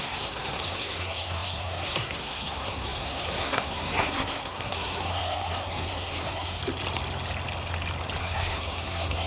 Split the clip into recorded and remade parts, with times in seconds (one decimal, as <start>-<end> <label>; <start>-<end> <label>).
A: 0.0-6.6 remade; 6.6-8.2 recorded; 8.2-9.3 remade